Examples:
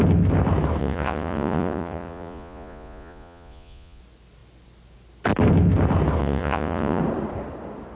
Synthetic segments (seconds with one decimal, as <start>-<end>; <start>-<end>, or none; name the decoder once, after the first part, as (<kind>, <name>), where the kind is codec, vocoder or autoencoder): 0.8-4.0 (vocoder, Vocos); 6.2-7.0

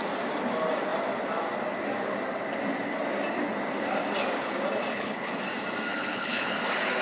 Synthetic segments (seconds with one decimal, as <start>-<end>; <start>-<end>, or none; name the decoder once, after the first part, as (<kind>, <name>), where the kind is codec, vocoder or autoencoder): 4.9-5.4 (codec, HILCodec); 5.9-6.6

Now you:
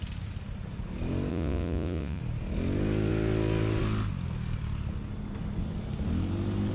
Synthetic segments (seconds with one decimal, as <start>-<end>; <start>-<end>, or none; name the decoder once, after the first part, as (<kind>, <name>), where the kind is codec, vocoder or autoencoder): 1.3-2.2 (vocoder, Vocos)

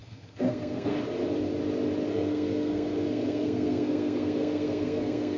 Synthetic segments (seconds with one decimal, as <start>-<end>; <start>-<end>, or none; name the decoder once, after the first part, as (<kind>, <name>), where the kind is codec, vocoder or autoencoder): 0.0-0.9 (codec, SNAC); 2.1-5.4

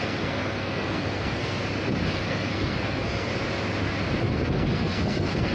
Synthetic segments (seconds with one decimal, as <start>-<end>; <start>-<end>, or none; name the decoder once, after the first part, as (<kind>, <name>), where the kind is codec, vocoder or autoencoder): 0.0-1.6 (codec, SNAC); 2.1-3.3; 4.2-5.5

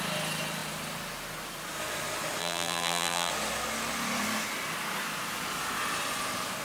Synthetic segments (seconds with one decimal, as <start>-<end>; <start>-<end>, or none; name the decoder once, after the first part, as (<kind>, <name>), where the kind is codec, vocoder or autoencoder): 2.4-3.3 (vocoder, BigVGAN v2)